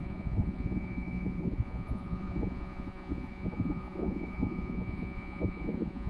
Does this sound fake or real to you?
fake